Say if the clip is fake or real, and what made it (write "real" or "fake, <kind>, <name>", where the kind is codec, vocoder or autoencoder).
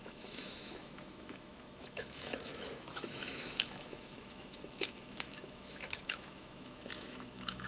fake, autoencoder, DAC-VAE